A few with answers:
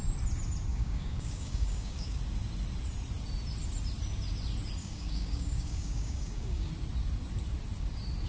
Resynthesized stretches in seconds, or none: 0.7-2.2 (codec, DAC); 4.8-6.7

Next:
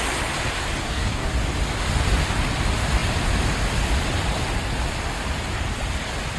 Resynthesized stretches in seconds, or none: 0.8-1.3 (codec, DAC)

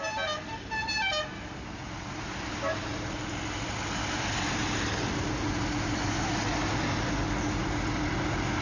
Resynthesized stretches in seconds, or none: none

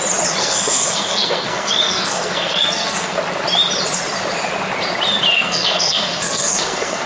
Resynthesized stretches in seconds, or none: 0.4-3.2 (codec, SNAC); 5.3-7.1

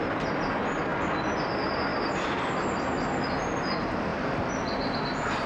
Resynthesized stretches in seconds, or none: 0.9-1.5 (vocoder, BigVGAN v2); 1.9-2.6; 4.1-5.0

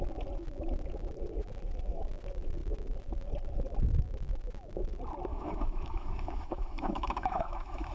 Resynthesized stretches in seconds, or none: 5.3-7.9 (autoencoder, DAC-VAE)

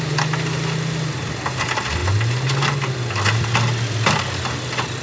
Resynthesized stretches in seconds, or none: none